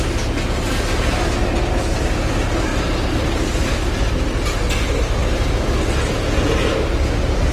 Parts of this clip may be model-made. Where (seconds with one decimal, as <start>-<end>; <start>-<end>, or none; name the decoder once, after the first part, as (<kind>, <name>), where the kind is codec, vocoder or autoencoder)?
none